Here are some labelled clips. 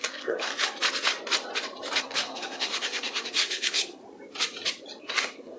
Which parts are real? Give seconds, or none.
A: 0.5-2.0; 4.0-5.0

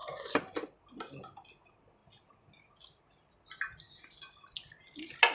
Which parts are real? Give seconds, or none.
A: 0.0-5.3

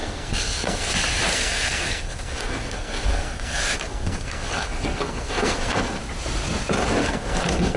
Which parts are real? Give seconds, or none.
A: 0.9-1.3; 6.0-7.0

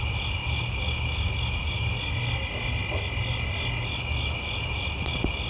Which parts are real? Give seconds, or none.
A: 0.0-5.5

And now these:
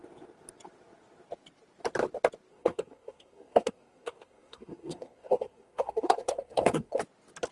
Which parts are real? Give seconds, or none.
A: 0.0-2.5; 7.0-7.5